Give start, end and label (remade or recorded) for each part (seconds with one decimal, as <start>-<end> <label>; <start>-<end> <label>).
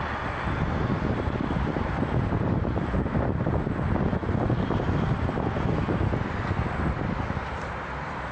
0.0-0.9 recorded; 0.9-1.8 remade; 1.8-4.2 recorded; 4.2-6.4 remade; 6.4-8.3 recorded